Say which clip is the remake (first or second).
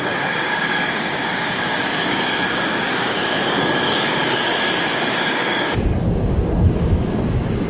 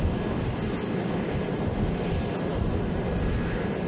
first